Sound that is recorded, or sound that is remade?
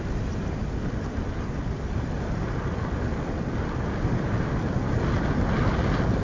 recorded